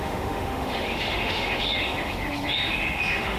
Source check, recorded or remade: remade